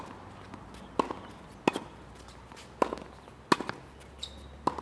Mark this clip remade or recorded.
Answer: recorded